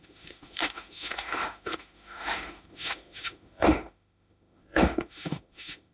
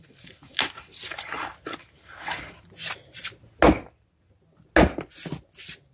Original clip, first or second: second